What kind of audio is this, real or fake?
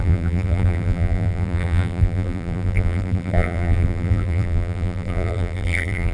fake